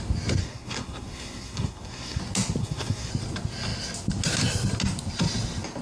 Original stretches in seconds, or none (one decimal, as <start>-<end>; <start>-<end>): 0.0-0.4; 2.2-2.6; 3.1-5.8

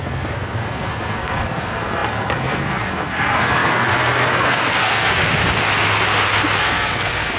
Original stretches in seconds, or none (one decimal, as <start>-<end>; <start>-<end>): 5.2-6.6

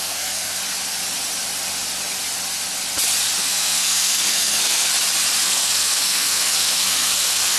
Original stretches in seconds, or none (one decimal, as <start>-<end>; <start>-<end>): 0.6-3.4; 4.9-5.4

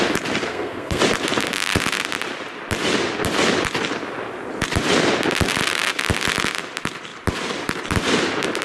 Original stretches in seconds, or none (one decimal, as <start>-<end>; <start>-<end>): 0.0-0.5; 1.0-8.6

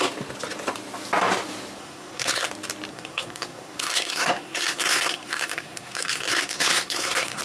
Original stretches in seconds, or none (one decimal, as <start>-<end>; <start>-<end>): 0.0-1.8; 2.5-2.9

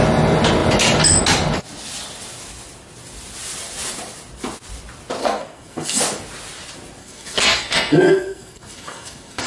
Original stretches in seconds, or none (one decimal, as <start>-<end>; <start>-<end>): 0.0-5.2; 6.0-7.0

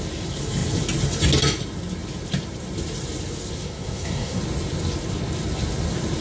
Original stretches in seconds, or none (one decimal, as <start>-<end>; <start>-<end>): 0.0-3.6; 4.4-6.2

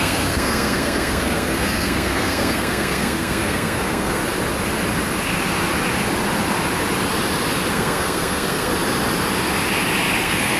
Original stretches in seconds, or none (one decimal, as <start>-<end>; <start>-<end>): 4.2-7.7; 8.7-10.2